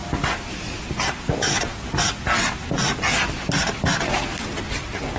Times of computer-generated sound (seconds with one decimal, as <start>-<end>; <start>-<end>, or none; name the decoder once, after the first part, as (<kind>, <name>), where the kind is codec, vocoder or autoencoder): 0.0-3.1 (vocoder, BigVGAN v2)